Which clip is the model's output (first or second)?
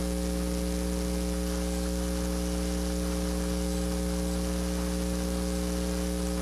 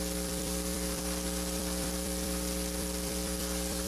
second